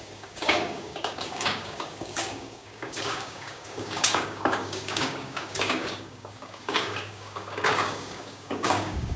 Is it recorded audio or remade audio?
remade